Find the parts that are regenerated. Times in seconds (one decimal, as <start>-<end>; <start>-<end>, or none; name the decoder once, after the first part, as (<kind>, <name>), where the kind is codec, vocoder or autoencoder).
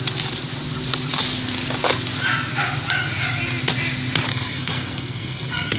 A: 4.3-5.8 (codec, SNAC)